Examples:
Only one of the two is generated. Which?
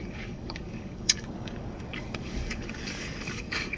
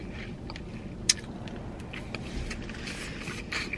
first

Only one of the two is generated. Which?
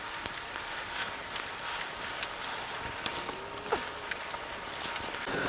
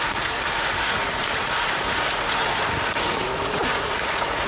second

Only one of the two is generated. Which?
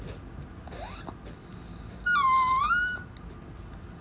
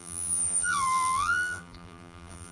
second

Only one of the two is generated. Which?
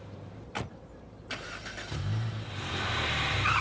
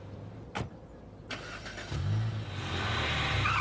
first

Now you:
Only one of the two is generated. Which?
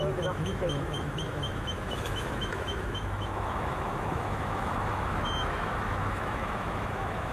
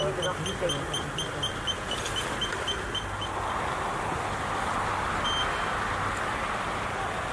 first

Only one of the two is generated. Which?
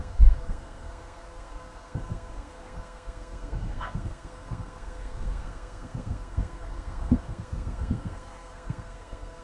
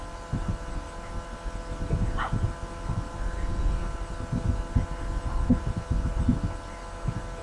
first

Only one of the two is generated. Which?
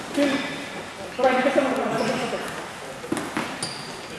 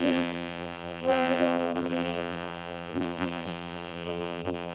second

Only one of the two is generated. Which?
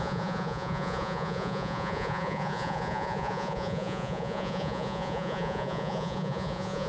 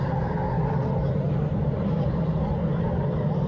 first